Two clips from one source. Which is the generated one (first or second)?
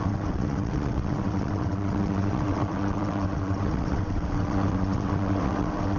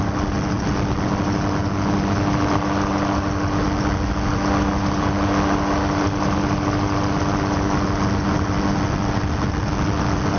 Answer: first